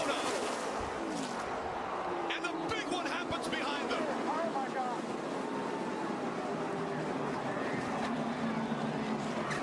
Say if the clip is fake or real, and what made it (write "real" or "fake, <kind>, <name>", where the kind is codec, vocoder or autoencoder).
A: real